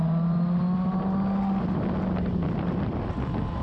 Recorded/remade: recorded